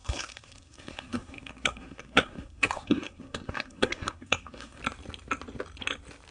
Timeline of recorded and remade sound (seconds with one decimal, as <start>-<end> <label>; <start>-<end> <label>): 0.0-4.8 remade; 4.8-6.3 recorded